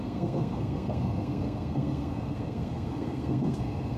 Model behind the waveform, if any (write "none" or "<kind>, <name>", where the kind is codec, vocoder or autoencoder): codec, SNAC